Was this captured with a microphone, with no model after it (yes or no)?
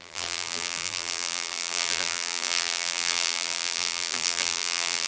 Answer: no